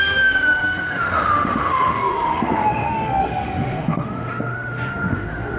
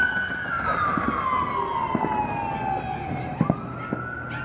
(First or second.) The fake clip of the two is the first